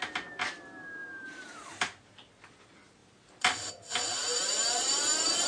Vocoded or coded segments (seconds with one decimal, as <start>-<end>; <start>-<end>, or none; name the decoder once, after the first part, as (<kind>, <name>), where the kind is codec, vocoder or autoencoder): 1.0-2.0 (vocoder, BigVGAN v2); 3.0-3.7; 4.2-5.5